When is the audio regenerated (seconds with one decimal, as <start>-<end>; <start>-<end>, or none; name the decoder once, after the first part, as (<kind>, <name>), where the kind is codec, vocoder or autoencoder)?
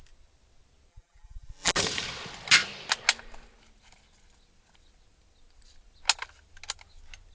0.9-1.7 (vocoder, BigVGAN v2)